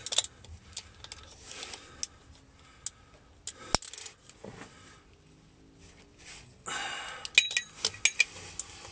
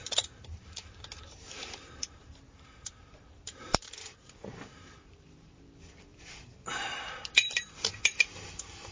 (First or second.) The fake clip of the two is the second